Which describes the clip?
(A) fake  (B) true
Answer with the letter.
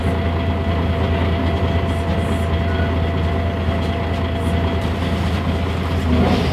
B